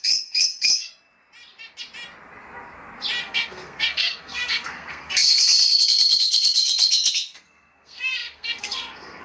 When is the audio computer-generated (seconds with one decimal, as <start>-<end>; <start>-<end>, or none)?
0.0-0.9; 3.2-9.2